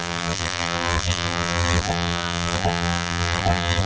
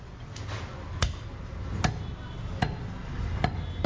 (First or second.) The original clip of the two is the second